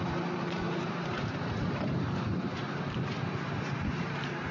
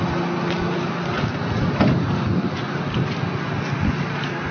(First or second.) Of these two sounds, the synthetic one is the first